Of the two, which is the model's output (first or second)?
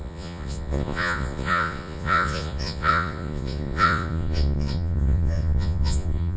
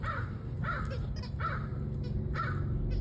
first